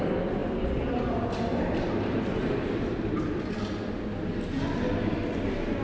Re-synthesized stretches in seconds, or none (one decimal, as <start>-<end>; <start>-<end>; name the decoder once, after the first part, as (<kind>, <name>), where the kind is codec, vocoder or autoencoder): none

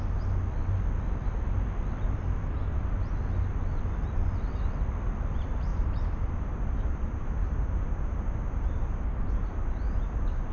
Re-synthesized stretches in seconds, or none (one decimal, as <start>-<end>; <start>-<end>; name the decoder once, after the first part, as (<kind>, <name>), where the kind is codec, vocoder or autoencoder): 5.7-10.5 (vocoder, BigVGAN v2)

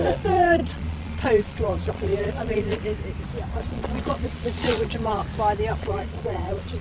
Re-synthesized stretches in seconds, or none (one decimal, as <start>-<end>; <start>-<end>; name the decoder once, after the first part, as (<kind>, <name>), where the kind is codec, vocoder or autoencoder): 0.0-2.8 (vocoder, Vocos); 3.5-5.2; 5.7-6.8

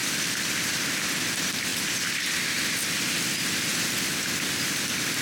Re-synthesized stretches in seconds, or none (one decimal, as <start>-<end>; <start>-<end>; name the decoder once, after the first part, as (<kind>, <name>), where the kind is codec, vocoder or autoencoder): none

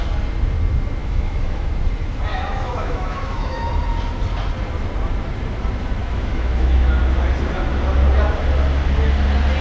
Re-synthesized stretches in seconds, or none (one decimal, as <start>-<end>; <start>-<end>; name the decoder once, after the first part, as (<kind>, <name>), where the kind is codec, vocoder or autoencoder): 1.0-1.7 (autoencoder, DAC-VAE); 2.3-3.7; 6.0-7.0

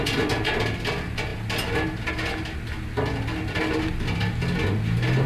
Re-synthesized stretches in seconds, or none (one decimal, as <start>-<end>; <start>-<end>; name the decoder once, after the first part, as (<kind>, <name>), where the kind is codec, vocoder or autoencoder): none